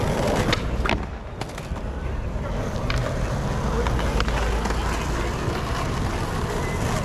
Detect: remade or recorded recorded